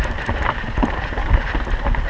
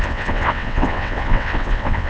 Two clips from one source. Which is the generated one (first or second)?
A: second